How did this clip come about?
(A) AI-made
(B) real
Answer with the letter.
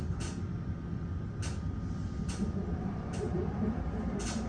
A